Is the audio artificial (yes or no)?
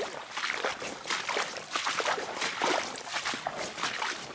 no